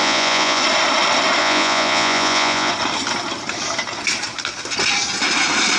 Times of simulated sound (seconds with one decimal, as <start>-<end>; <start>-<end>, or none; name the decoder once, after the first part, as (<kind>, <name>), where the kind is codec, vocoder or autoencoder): 0.0-0.6 (vocoder, Vocos); 1.4-2.7